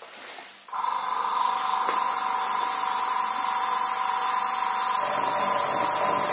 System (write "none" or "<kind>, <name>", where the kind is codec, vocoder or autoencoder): none